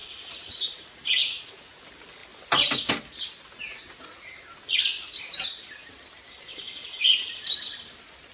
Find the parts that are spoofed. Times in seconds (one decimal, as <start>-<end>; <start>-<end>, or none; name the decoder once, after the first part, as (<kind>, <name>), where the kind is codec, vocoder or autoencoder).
0.0-1.8 (vocoder, Vocos); 3.7-4.5